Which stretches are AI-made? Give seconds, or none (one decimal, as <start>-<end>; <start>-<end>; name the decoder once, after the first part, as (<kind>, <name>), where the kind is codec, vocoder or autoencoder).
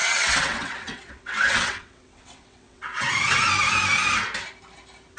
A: 0.0-3.1 (vocoder, WaveNeXt)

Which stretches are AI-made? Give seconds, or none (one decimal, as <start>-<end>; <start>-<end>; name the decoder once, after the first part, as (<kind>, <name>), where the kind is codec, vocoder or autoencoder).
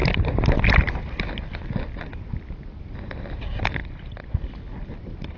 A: none